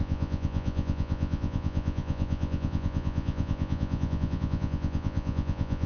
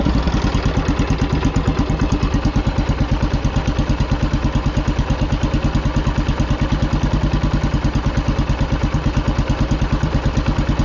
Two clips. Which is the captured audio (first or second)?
second